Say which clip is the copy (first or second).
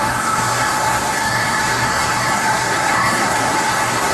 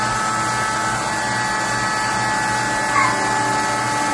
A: first